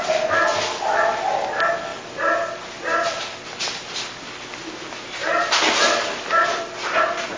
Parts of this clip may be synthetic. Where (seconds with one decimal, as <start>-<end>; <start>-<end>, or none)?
none